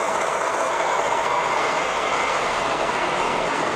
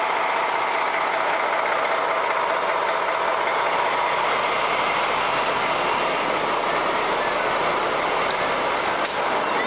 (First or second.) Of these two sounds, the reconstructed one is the first